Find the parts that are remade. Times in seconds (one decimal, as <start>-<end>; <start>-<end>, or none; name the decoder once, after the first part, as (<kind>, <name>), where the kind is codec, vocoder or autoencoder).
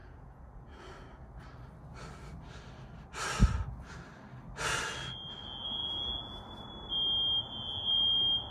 0.0-0.8 (vocoder, Vocos)